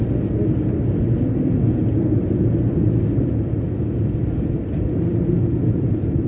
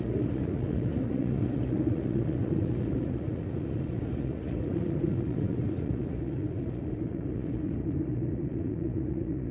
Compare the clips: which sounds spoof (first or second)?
second